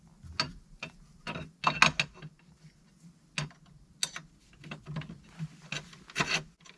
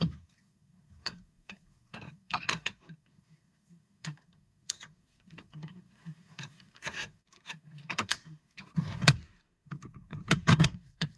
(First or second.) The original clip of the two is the first